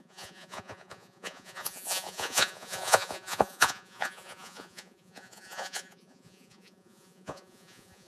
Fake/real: fake